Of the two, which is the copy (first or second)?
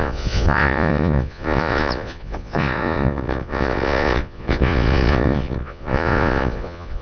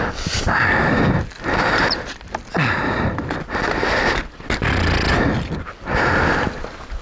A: first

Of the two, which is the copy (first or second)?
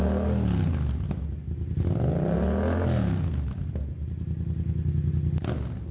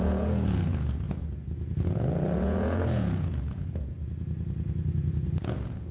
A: second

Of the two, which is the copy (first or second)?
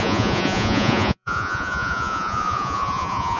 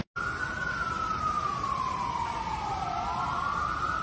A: first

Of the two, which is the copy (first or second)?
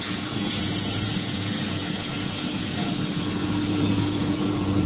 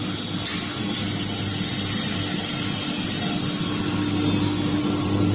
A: first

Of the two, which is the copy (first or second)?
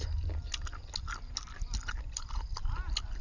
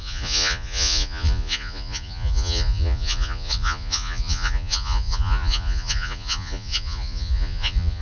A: second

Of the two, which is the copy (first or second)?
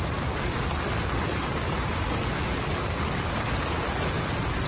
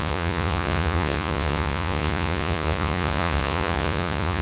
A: second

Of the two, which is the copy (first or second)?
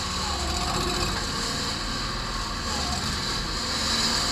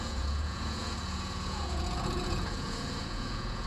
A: second